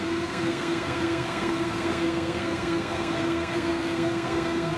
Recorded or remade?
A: remade